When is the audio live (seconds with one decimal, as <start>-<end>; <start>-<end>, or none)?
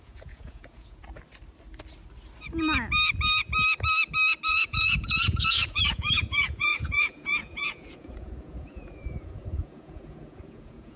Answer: 1.0-4.5